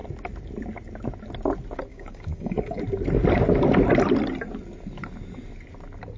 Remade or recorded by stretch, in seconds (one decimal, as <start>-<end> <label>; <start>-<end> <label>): 0.0-1.9 recorded; 1.9-2.8 remade; 2.8-6.2 recorded